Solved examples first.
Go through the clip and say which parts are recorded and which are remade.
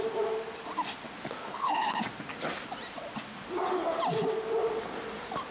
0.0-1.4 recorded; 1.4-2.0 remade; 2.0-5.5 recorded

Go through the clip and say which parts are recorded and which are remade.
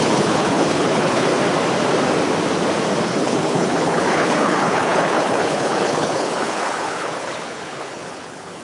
0.0-1.3 remade; 1.3-3.0 recorded; 3.0-8.6 remade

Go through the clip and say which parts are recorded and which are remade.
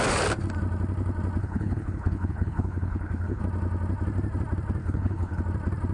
0.0-1.4 recorded; 1.4-3.4 remade; 3.4-4.8 recorded; 4.8-5.4 remade; 5.4-5.9 recorded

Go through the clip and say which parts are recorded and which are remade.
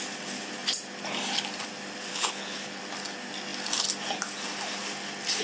0.0-2.1 recorded; 2.1-2.8 remade; 2.8-5.4 recorded